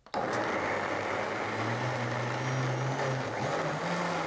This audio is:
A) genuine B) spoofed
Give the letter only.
A